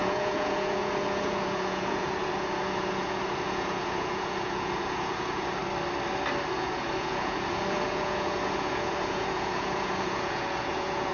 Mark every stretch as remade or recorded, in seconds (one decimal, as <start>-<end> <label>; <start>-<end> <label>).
0.0-5.6 remade; 5.6-6.5 recorded; 6.5-11.1 remade